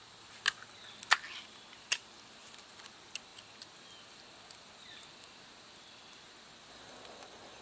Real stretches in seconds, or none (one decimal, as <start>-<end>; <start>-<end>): 0.0-7.6